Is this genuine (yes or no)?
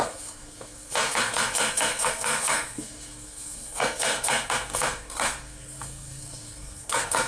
no